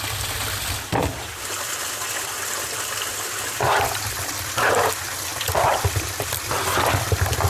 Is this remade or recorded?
recorded